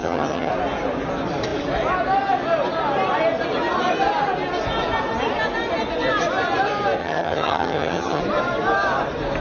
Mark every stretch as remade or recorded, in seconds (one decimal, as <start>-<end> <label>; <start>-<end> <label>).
0.0-0.5 remade; 0.5-7.0 recorded; 7.0-8.2 remade; 8.2-9.4 recorded

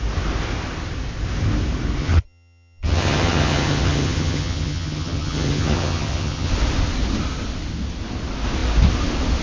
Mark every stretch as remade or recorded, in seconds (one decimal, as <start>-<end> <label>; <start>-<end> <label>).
0.0-2.0 recorded; 2.0-6.5 remade; 6.5-9.4 recorded

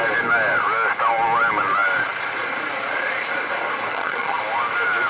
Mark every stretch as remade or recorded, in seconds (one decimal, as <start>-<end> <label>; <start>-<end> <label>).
0.0-3.9 recorded; 3.9-4.4 remade; 4.4-5.1 recorded

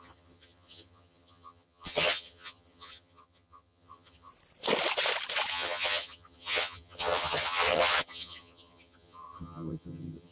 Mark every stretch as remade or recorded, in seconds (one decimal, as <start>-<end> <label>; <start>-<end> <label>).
0.0-4.3 remade; 4.3-5.5 recorded; 5.5-10.3 remade

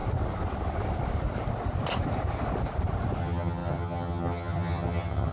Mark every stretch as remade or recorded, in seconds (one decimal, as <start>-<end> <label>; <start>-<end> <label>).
0.0-3.2 recorded; 3.2-5.3 remade

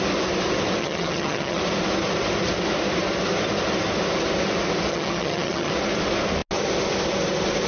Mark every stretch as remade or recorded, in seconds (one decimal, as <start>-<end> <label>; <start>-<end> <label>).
0.0-0.8 recorded; 0.8-1.6 remade; 1.6-4.9 recorded; 4.9-5.7 remade; 5.7-7.7 recorded

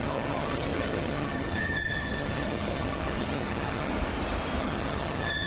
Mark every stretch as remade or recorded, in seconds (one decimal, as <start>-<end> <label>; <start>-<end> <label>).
0.0-3.9 remade; 3.9-4.6 recorded; 4.6-5.5 remade